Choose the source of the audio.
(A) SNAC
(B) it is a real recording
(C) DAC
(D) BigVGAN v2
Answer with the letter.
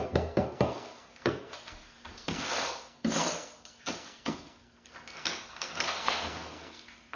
A